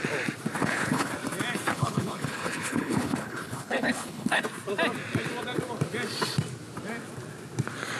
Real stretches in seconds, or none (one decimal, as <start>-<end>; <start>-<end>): 0.0-0.6; 1.1-1.7; 4.4-8.0